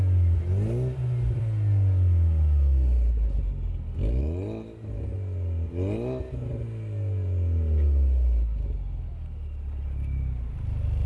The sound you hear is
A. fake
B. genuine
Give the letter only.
B